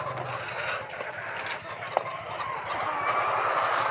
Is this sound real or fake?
real